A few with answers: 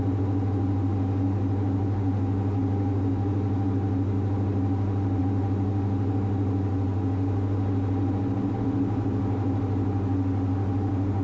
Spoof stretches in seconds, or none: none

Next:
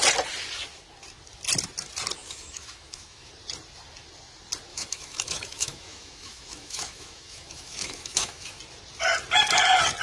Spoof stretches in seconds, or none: 2.2-3.3 (autoencoder, DAC-VAE); 4.7-8.6

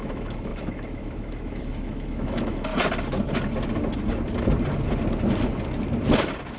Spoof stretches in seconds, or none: 0.0-2.7 (autoencoder, DAC-VAE)

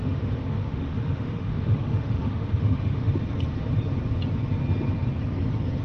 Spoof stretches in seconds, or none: 0.0-3.1 (autoencoder, DAC-VAE)

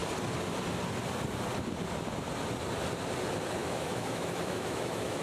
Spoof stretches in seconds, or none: 3.6-5.2 (autoencoder, DAC-VAE)